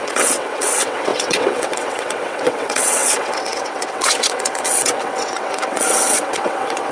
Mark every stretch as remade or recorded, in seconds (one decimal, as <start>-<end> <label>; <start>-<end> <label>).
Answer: 0.0-6.9 remade